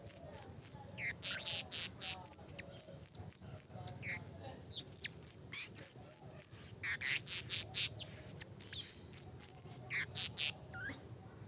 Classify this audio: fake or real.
real